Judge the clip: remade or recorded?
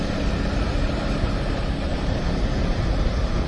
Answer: remade